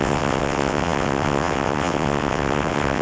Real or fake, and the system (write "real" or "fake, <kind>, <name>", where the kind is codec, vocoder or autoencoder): fake, vocoder, WaveNeXt